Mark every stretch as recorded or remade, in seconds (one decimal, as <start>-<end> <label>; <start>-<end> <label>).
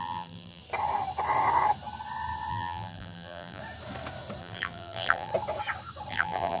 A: 0.0-0.6 remade; 0.6-2.5 recorded; 2.5-3.6 remade; 3.6-4.4 recorded; 4.4-5.3 remade; 5.3-6.1 recorded; 6.1-6.6 remade